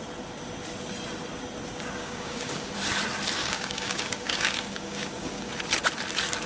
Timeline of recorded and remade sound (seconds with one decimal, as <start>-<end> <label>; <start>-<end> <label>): 0.0-2.0 recorded; 2.0-2.7 remade; 2.7-3.4 recorded; 3.4-5.5 remade; 5.5-6.5 recorded